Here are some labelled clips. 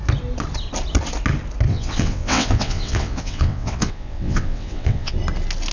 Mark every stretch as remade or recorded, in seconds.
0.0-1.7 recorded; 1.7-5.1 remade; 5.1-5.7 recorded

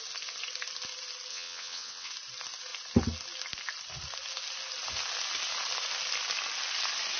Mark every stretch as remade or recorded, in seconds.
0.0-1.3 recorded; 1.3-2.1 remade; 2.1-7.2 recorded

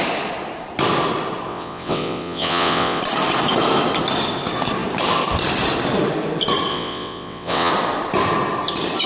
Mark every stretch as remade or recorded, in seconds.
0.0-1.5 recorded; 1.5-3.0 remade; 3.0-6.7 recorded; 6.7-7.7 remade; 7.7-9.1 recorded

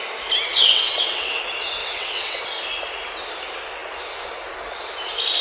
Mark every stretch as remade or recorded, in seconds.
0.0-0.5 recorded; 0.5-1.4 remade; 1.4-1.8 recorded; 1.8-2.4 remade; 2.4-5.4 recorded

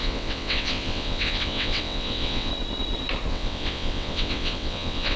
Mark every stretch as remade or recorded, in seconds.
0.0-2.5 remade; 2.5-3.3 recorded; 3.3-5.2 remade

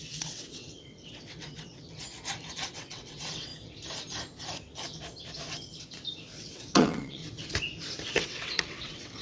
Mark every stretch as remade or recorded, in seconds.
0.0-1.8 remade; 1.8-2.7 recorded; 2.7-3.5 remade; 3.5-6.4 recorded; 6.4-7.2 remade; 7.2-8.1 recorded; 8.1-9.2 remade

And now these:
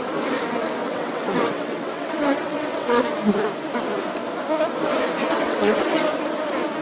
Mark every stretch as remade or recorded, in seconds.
0.0-0.8 recorded; 0.8-3.0 remade; 3.0-5.2 recorded; 5.2-6.0 remade; 6.0-6.8 recorded